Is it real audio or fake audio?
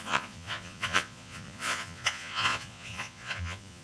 fake